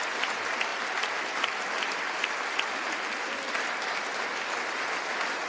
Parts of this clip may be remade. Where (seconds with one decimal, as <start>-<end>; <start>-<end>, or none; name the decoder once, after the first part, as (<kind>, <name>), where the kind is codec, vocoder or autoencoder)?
none